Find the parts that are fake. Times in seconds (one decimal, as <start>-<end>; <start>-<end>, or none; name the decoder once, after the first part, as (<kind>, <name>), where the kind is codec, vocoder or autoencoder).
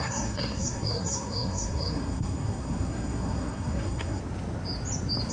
0.0-4.2 (codec, SNAC)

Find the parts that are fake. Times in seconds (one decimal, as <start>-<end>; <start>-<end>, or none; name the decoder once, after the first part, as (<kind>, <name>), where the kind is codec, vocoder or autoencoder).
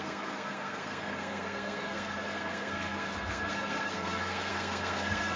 0.0-5.4 (codec, SNAC)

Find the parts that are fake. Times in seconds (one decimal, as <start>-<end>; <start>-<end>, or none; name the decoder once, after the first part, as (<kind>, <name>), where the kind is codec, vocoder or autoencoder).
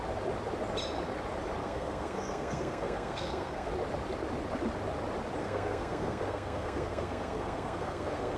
1.6-3.7 (codec, SNAC); 5.4-8.4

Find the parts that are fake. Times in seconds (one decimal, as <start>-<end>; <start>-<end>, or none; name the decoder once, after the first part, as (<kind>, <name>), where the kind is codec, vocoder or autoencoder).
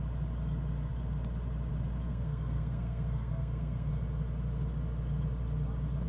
2.1-3.9 (codec, SNAC)